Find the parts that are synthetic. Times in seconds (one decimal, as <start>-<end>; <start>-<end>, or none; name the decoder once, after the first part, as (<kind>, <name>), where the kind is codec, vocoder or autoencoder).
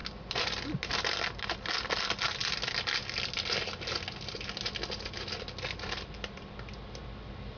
none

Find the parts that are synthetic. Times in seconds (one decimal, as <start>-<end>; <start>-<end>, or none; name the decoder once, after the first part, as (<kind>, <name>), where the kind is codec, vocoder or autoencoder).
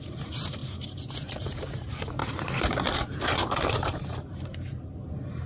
0.0-2.2 (vocoder, BigVGAN v2); 2.9-5.5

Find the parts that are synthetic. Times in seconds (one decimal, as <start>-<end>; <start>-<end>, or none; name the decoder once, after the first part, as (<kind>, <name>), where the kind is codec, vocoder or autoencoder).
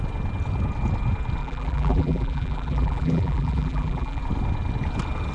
1.4-4.2 (vocoder, BigVGAN v2)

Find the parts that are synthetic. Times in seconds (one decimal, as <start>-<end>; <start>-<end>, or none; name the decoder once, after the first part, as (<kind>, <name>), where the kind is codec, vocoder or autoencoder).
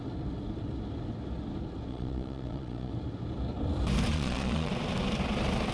1.9-2.9 (vocoder, Vocos); 4.1-4.7